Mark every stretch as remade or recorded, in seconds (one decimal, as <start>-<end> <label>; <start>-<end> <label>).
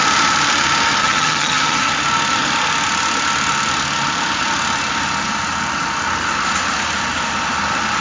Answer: 0.0-1.0 recorded; 1.0-1.9 remade; 1.9-8.0 recorded